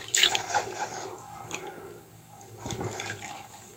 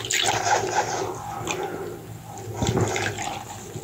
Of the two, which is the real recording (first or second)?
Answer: second